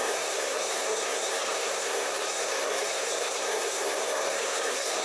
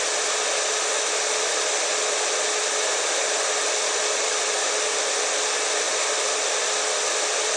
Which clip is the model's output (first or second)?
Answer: first